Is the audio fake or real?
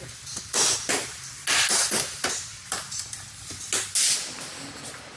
real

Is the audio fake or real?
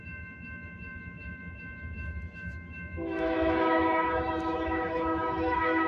fake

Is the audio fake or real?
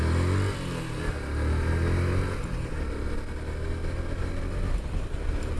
real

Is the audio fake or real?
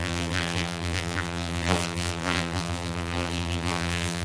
fake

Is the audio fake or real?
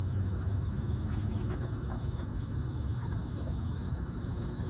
fake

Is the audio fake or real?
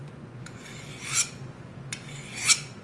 fake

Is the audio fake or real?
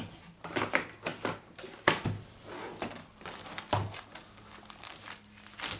real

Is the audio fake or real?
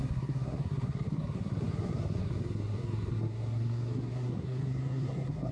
fake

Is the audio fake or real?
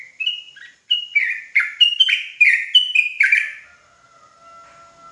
real